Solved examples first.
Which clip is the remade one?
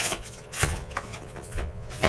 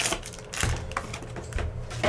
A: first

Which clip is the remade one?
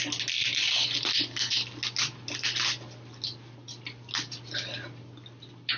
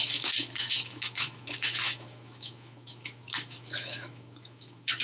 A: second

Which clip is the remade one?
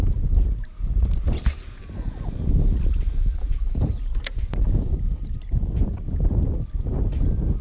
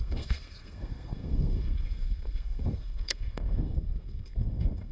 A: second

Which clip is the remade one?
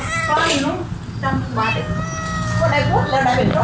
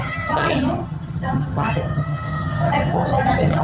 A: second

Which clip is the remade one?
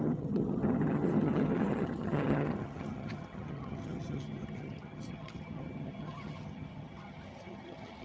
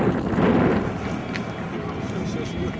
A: first